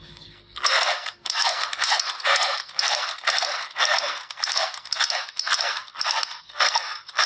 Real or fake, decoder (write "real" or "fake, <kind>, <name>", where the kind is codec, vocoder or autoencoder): fake, codec, SNAC